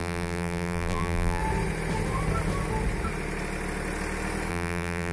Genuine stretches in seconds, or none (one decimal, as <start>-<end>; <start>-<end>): 1.4-4.5